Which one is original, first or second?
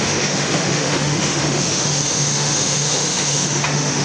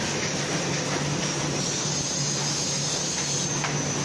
second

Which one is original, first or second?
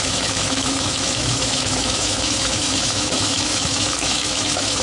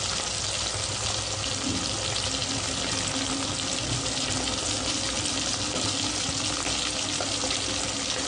second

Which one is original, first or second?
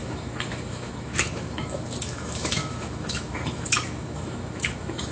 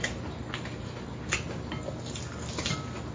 second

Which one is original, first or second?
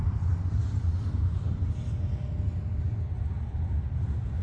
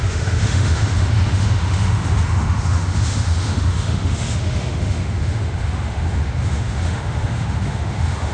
first